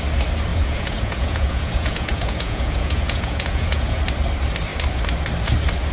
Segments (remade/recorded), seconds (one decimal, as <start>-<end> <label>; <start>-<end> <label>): 0.0-0.5 recorded; 0.5-4.0 remade; 4.0-5.9 recorded